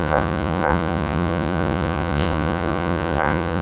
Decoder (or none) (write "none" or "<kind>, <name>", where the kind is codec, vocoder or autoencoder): vocoder, Vocos